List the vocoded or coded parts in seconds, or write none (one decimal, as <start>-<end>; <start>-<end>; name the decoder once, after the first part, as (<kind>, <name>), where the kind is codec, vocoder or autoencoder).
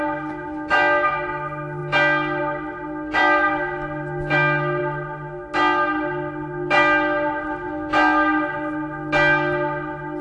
none